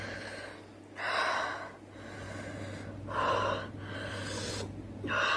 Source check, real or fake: real